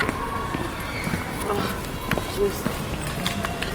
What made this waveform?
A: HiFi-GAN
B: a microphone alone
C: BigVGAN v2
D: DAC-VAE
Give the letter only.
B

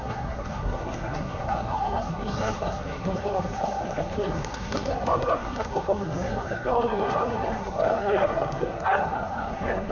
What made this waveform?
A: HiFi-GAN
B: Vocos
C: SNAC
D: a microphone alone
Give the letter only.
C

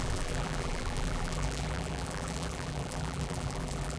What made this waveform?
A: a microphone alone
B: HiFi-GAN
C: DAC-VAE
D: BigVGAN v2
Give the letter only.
D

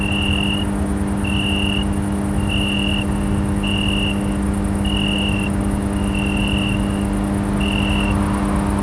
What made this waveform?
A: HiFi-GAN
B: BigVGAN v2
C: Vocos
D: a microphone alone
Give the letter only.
D